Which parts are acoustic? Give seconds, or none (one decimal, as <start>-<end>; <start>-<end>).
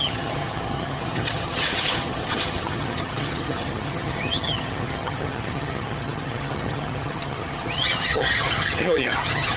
none